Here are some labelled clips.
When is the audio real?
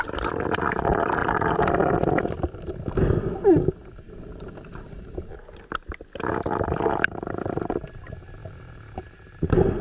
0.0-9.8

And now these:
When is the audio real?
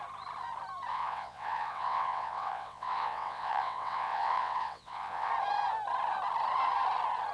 0.0-0.9; 5.3-7.3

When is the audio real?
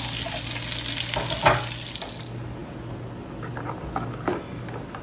0.0-5.0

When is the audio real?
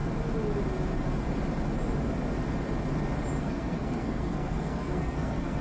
0.0-3.4